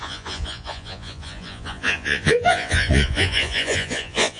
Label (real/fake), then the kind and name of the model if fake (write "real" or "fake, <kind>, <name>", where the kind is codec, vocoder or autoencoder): fake, vocoder, Vocos